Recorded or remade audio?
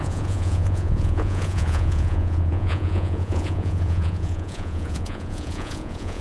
remade